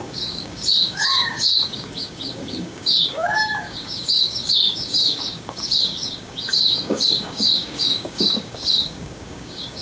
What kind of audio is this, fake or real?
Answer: fake